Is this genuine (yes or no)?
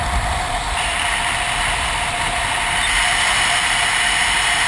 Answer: yes